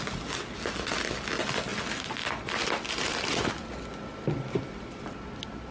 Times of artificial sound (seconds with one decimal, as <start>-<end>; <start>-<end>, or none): none